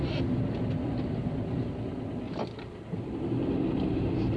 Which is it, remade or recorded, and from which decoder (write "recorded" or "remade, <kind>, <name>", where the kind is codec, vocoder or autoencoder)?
recorded